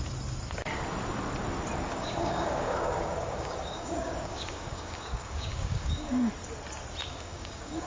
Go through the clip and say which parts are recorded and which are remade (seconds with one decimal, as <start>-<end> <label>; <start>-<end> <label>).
0.0-1.9 recorded; 1.9-6.3 remade; 6.3-7.0 recorded; 7.0-7.9 remade